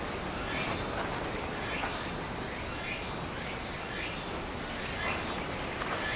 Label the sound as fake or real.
real